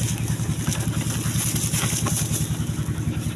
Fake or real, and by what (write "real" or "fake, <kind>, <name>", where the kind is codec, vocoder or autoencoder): real